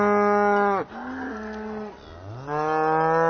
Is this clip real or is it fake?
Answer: real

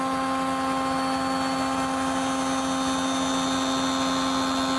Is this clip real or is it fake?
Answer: real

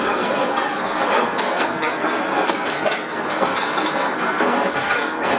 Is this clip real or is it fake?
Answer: fake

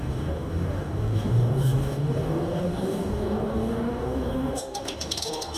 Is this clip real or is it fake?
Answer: fake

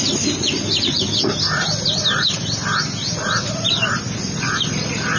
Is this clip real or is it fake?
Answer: fake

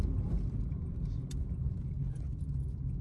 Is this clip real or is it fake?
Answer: real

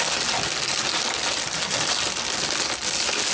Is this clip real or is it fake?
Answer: real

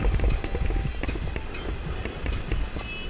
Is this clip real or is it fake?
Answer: real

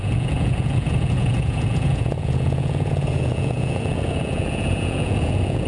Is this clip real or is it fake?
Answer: fake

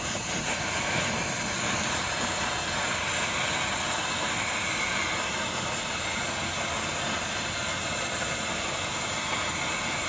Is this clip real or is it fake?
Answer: real